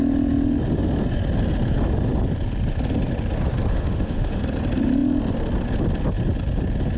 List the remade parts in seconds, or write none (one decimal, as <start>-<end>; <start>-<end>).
3.7-4.4